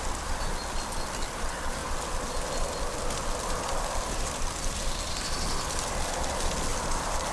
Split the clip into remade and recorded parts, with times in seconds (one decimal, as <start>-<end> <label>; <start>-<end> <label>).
0.0-6.7 recorded; 6.7-7.3 remade